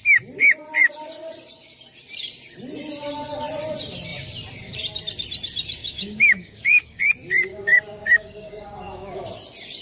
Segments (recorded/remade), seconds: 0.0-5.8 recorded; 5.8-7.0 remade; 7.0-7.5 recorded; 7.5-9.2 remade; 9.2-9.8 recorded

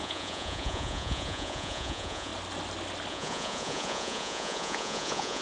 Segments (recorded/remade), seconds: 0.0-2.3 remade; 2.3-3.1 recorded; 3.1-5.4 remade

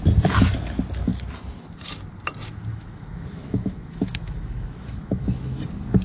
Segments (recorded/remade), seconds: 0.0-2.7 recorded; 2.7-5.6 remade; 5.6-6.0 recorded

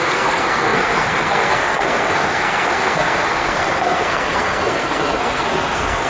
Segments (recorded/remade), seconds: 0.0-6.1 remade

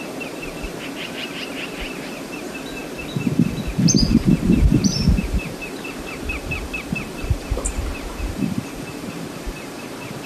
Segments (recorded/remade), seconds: 0.0-2.8 remade; 2.8-4.1 recorded; 4.1-10.3 remade